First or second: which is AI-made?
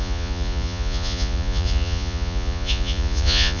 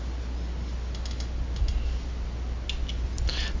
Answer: first